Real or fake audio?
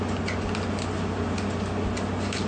real